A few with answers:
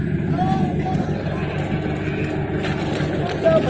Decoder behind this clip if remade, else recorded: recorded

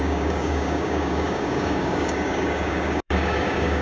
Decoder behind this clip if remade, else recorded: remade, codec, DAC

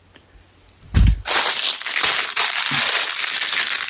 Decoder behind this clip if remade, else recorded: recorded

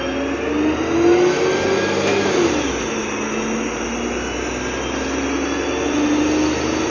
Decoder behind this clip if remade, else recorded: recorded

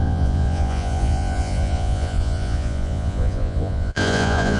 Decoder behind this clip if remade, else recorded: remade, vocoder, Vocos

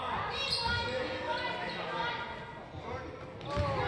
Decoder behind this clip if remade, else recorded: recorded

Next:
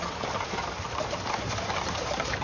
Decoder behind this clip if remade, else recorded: remade, vocoder, BigVGAN v2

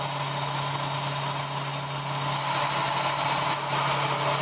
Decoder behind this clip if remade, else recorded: recorded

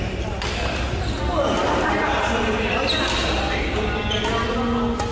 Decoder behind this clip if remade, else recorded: recorded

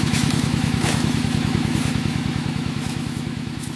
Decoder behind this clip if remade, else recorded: remade, autoencoder, DAC-VAE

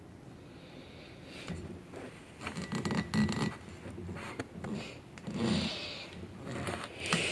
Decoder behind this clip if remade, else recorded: recorded